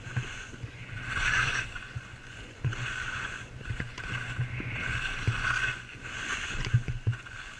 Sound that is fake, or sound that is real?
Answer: fake